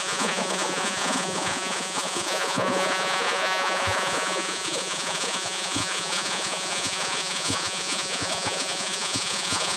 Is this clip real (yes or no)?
no